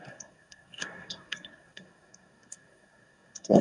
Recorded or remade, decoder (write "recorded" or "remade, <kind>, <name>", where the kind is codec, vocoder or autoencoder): remade, codec, SNAC